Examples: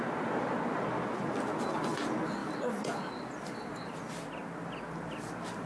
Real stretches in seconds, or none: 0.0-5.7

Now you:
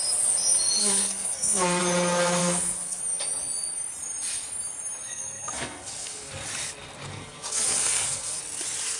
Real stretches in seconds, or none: 0.0-0.8; 1.8-2.4; 3.0-5.1; 6.3-7.1; 8.4-9.0

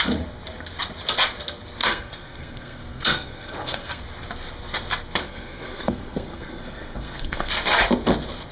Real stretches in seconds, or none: 0.0-1.8; 4.0-5.2; 7.5-8.5

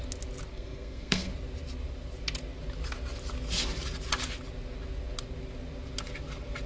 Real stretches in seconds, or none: 0.0-0.5; 1.3-6.7

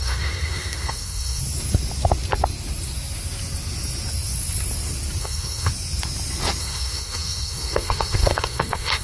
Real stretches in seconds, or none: 1.4-5.2; 5.7-6.6

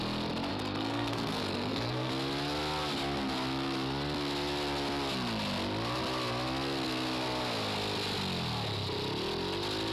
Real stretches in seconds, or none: 0.0-0.5; 2.1-9.9

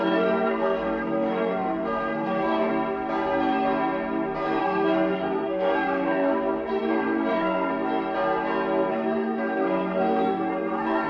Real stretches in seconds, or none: 2.7-4.6; 7.7-8.9

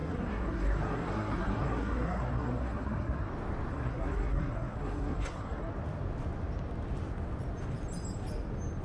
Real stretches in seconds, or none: 3.3-3.7; 5.7-8.8